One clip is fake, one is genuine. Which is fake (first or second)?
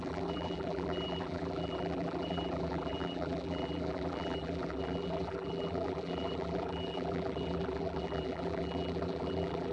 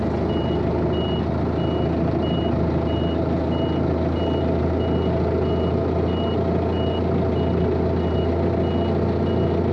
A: first